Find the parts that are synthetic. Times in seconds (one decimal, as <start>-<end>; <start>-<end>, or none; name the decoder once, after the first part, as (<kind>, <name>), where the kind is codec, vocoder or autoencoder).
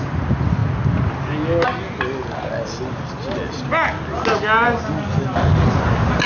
none